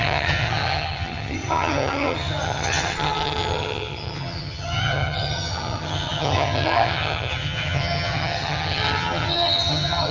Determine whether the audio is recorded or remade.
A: remade